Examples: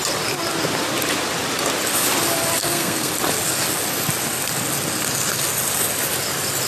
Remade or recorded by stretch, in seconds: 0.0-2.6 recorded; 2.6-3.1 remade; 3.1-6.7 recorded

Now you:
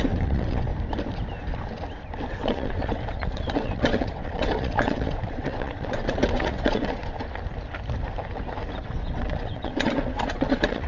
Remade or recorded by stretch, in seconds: 0.0-0.7 remade; 0.7-2.3 recorded; 2.3-7.0 remade; 7.0-8.8 recorded; 8.8-10.9 remade